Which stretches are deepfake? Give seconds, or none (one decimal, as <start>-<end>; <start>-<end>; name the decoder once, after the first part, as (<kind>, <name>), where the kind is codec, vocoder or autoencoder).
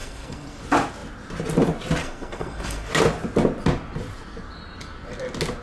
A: 0.0-0.6 (codec, SNAC); 2.0-2.9